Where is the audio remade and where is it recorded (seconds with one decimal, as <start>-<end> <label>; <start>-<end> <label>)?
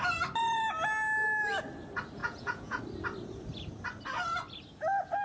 0.0-2.2 recorded; 2.2-2.8 remade; 2.8-5.2 recorded